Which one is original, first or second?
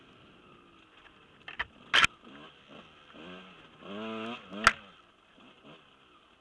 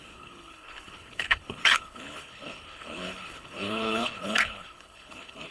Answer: first